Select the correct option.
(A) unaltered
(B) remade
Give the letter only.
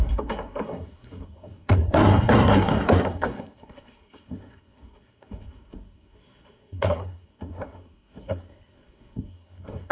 B